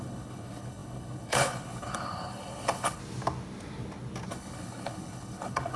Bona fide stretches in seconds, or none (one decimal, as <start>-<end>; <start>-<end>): 3.0-4.3

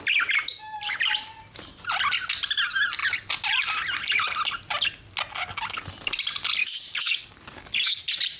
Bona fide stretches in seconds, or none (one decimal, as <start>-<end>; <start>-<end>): 0.0-6.6; 8.0-8.4

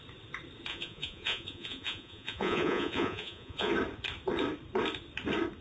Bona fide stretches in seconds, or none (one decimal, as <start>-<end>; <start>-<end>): 0.0-0.7; 3.7-5.6

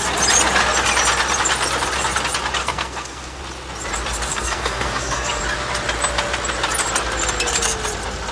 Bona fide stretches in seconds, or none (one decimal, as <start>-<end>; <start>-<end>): 0.0-2.6; 3.4-4.3; 5.4-8.3

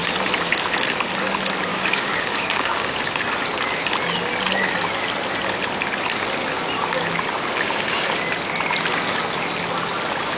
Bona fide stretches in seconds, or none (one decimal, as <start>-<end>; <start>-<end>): 0.0-1.7; 3.2-10.4

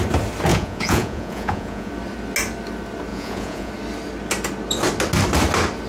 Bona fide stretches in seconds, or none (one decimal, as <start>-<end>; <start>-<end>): 0.0-0.5; 1.9-3.1; 3.7-5.9

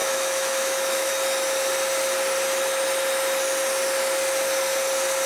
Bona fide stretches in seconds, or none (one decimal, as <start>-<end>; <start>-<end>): 1.1-5.3